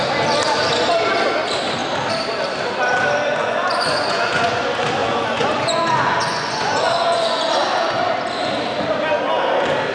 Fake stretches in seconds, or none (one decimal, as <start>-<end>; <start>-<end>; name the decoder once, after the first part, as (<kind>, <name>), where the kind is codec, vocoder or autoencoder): 3.4-4.6 (vocoder, Vocos); 5.0-7.5